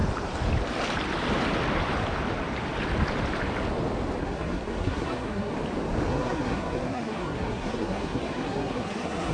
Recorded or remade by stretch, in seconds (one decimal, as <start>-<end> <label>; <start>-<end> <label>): 0.0-4.2 recorded; 4.2-5.5 remade; 5.5-6.1 recorded; 6.1-9.3 remade